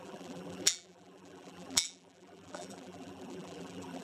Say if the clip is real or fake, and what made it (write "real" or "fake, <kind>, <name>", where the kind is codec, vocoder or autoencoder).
fake, vocoder, BigVGAN v2